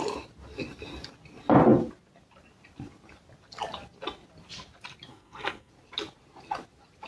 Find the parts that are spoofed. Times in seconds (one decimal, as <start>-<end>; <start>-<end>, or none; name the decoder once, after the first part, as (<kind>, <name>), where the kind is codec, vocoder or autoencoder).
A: 5.1-5.7 (codec, SNAC)